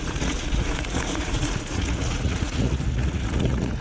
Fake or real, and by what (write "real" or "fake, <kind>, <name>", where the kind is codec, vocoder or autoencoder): fake, vocoder, Vocos